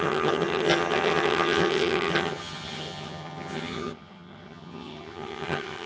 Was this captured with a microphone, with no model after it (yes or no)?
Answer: no